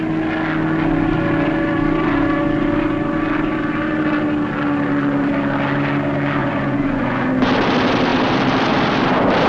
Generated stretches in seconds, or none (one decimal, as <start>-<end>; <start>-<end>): 6.4-7.3